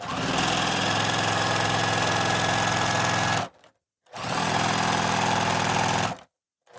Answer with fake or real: real